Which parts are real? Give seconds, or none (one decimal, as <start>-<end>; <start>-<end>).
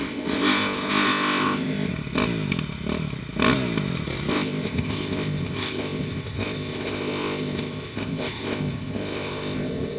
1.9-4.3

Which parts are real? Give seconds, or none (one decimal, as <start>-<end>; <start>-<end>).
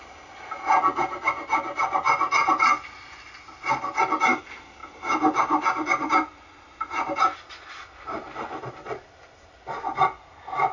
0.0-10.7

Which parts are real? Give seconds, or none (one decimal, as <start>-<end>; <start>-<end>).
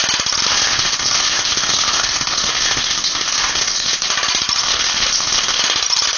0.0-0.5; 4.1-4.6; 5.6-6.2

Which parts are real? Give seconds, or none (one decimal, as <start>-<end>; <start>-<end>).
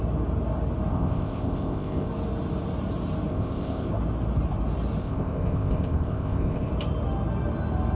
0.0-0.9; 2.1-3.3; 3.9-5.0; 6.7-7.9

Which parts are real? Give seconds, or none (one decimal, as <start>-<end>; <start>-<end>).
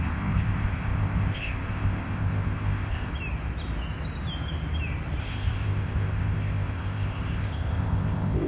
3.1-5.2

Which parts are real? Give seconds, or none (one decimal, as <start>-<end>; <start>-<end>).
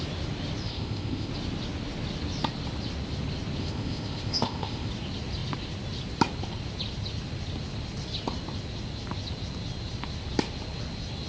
0.0-0.7; 1.3-3.6; 4.9-11.3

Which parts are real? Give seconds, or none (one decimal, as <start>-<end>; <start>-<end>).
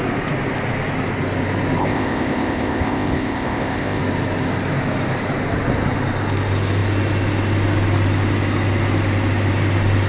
0.0-1.8; 4.0-10.1